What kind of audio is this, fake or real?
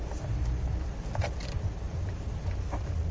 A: real